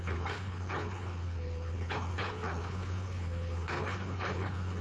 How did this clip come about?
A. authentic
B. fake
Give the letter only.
B